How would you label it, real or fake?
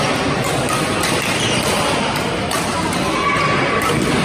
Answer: real